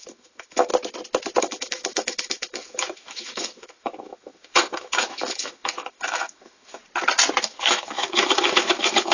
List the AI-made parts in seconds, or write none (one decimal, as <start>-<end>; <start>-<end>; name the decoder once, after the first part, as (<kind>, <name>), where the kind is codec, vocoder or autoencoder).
0.0-0.7 (autoencoder, DAC-VAE); 1.4-6.8; 7.4-9.1